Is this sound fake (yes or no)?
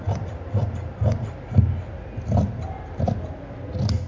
no